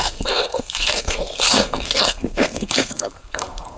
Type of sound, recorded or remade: remade